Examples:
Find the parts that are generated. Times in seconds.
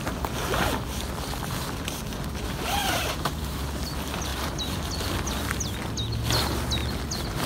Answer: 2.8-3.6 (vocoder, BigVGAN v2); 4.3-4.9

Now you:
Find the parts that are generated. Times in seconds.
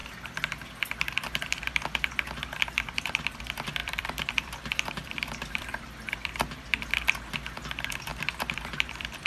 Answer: 3.8-6.1 (vocoder, BigVGAN v2); 8.1-9.3